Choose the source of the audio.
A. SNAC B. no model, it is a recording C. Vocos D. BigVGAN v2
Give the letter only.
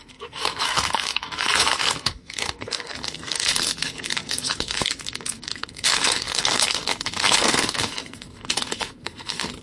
A